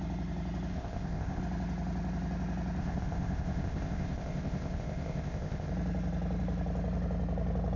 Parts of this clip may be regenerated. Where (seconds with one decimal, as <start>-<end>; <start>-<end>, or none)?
0.7-1.4; 2.8-5.7